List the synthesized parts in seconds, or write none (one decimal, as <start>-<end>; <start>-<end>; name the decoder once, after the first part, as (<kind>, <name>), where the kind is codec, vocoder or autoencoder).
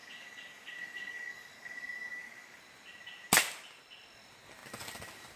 0.0-2.6 (codec, DAC)